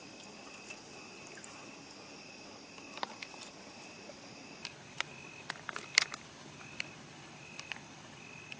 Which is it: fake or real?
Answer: real